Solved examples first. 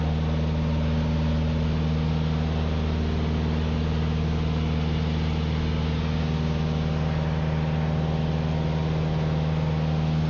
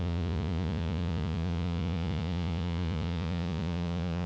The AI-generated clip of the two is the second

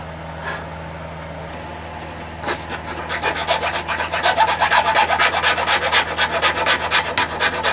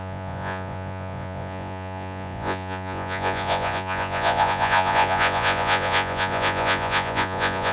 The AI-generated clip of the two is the second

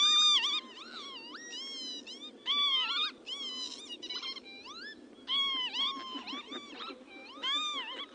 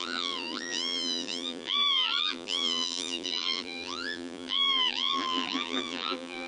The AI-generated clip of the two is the second